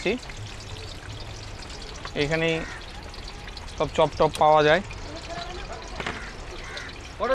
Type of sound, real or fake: real